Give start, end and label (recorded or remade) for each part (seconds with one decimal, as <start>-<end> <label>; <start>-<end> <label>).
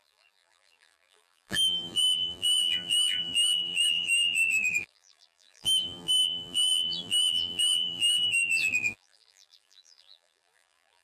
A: 0.0-11.0 remade